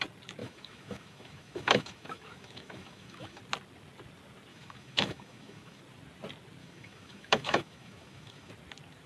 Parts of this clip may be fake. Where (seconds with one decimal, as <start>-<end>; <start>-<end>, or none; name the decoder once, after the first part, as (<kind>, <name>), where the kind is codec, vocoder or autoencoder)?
0.4-3.4 (autoencoder, DAC-VAE); 4.5-5.8; 6.6-8.5